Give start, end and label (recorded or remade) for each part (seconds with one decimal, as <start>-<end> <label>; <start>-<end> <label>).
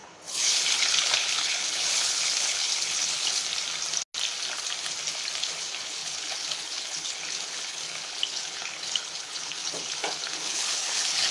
0.0-3.4 remade; 3.4-5.4 recorded; 5.4-11.3 remade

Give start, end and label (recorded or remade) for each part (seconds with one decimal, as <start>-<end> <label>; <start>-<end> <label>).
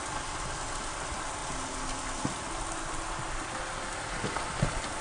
0.0-5.0 recorded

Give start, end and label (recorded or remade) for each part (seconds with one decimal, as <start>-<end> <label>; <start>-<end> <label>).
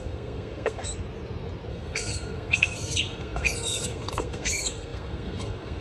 0.0-0.9 remade; 0.9-1.7 recorded; 1.7-5.8 remade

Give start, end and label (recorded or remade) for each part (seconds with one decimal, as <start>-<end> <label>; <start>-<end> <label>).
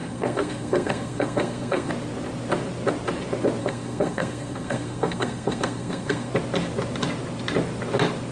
0.0-1.9 remade; 1.9-3.6 recorded; 3.6-6.3 remade; 6.3-8.3 recorded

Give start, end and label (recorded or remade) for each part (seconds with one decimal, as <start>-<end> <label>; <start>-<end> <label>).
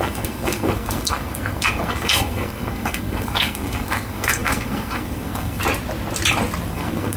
0.0-5.6 remade; 5.6-6.7 recorded; 6.7-7.2 remade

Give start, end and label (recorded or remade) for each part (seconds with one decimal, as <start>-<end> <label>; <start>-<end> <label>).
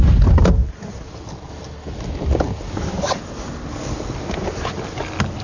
0.0-5.4 recorded